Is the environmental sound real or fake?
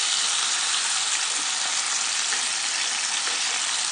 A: real